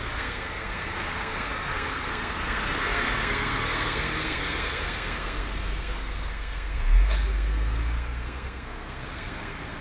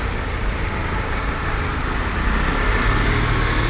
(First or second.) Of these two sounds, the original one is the second